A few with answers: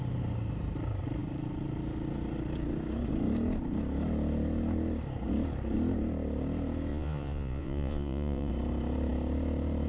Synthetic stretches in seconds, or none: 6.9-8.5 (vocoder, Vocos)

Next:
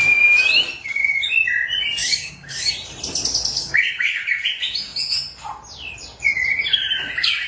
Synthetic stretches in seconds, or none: 0.8-1.3 (codec, DAC); 2.0-2.7; 3.6-4.2

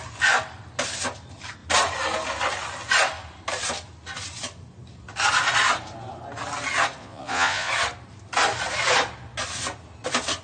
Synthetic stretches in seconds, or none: 7.0-7.7 (vocoder, Vocos)

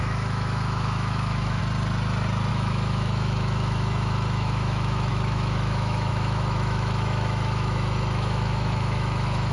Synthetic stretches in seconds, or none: 0.0-1.6 (autoencoder, DAC-VAE); 2.5-9.5

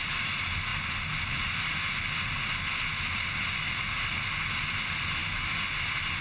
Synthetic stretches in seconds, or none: none